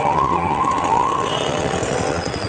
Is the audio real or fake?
fake